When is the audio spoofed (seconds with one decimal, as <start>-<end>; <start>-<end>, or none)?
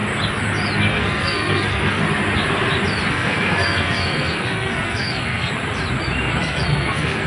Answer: 0.9-2.0; 3.1-5.5; 6.3-7.3